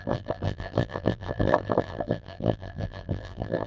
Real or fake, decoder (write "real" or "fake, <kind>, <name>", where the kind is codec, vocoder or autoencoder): fake, vocoder, BigVGAN v2